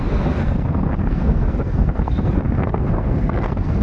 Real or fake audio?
fake